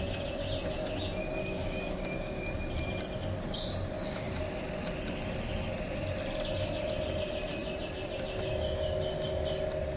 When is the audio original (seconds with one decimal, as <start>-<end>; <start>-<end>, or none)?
0.0-1.4; 2.5-10.0